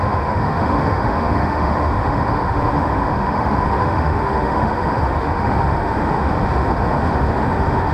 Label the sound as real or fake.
fake